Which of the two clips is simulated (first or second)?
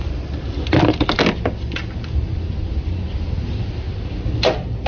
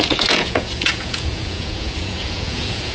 second